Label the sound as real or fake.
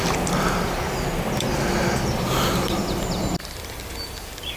real